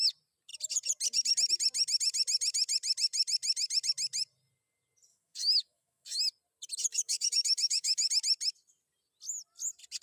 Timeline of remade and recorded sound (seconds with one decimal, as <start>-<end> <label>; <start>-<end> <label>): 0.0-5.1 recorded; 5.1-6.2 remade; 6.2-6.9 recorded; 6.9-8.1 remade; 8.1-10.0 recorded